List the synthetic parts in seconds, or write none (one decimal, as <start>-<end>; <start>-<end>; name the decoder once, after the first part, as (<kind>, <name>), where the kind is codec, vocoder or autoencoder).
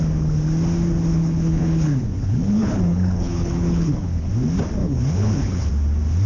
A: 1.1-4.3 (codec, HILCodec); 4.8-5.7